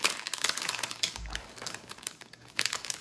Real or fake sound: fake